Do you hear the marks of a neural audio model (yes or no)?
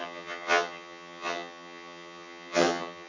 yes